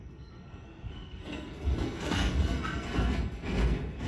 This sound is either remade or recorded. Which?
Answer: remade